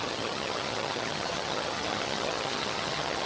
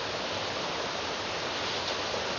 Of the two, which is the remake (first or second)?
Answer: first